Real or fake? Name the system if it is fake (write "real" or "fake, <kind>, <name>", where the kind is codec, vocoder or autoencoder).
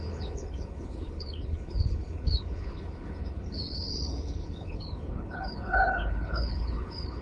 fake, codec, HILCodec